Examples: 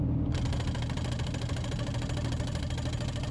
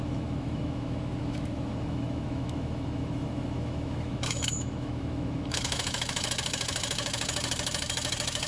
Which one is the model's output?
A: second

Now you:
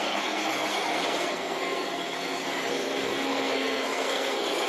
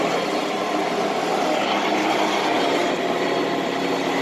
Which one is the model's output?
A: first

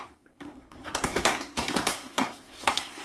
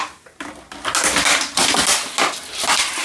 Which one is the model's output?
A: first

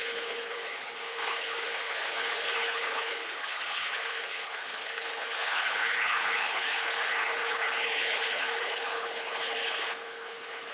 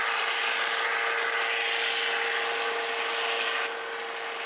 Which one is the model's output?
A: first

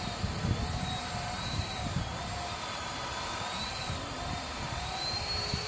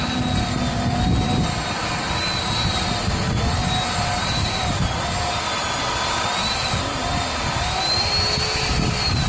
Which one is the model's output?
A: first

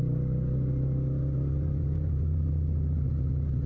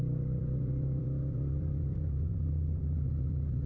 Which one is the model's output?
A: second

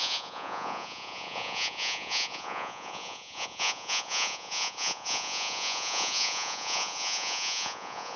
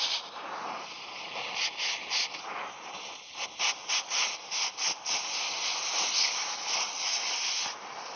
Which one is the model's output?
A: first